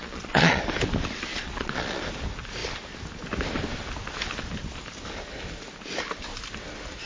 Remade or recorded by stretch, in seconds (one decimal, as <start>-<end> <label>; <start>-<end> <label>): 0.0-0.6 remade; 0.6-1.3 recorded; 1.3-2.0 remade; 2.0-7.1 recorded